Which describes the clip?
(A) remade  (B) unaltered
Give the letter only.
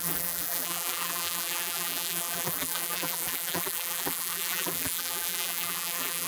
A